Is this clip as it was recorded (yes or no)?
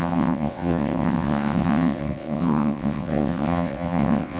no